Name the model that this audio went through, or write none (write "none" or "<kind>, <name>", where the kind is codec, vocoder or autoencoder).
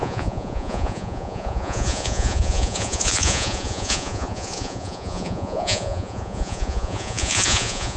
vocoder, Vocos